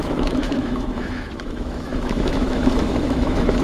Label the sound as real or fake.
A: fake